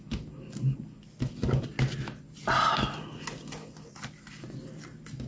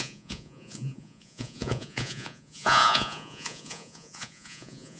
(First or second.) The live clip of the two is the first